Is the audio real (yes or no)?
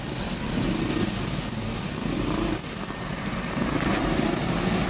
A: yes